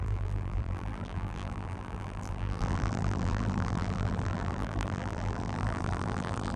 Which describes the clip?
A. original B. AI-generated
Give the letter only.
B